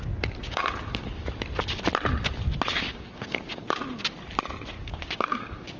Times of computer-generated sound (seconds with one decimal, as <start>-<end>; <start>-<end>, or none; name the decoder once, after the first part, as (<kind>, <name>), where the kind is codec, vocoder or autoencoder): 0.4-1.2 (codec, DAC); 2.8-3.6; 4.8-5.8